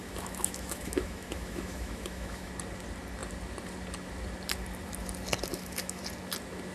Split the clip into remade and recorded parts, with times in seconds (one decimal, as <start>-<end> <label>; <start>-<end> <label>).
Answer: 0.0-2.5 remade; 2.5-5.5 recorded; 5.5-6.0 remade; 6.0-6.7 recorded